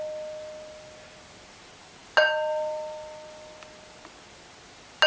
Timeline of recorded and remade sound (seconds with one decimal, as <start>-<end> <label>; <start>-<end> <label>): 0.0-5.1 recorded